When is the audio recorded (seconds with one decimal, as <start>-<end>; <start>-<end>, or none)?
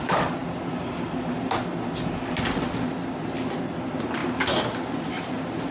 0.0-5.7